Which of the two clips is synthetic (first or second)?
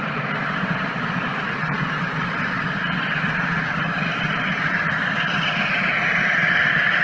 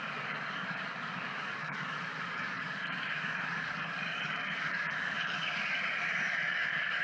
second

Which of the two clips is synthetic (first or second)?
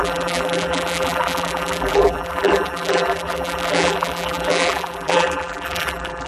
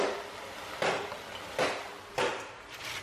first